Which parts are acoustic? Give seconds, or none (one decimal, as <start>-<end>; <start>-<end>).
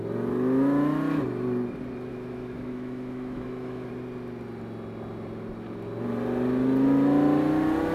0.0-2.1; 3.9-7.9